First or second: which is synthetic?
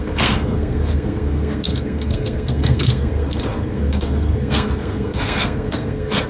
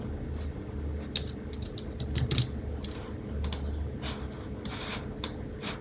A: first